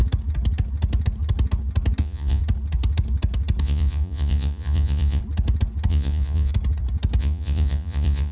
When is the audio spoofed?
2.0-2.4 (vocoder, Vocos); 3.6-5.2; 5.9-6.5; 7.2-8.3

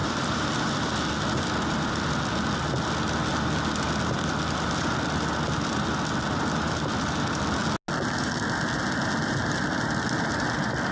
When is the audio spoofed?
none

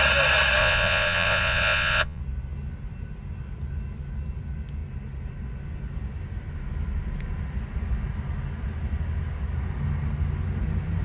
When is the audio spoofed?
0.6-2.2 (vocoder, Vocos)

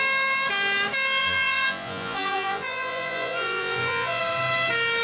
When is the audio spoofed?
1.2-4.2 (vocoder, Vocos)